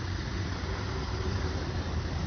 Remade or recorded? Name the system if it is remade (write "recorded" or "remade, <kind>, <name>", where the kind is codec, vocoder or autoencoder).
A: remade, vocoder, BigVGAN v2